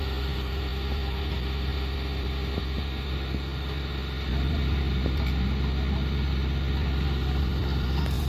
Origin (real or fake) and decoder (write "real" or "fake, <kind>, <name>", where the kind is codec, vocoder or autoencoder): real